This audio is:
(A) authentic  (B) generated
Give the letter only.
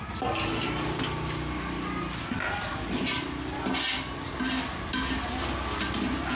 A